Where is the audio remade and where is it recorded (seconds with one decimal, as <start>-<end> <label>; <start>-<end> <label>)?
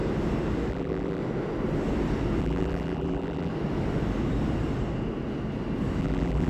0.0-0.7 recorded; 0.7-1.2 remade; 1.2-2.4 recorded; 2.4-3.5 remade; 3.5-6.0 recorded; 6.0-6.5 remade